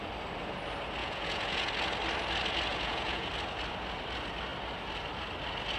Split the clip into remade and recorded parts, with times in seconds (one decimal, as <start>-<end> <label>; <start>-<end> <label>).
0.0-1.0 recorded; 1.0-1.7 remade; 1.7-2.7 recorded; 2.7-3.3 remade; 3.3-5.8 recorded